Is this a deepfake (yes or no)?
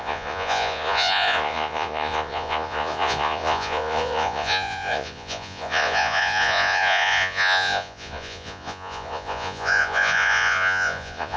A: yes